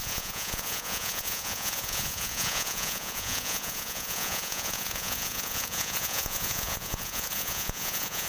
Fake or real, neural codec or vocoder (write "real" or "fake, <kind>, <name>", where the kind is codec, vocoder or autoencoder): fake, vocoder, Vocos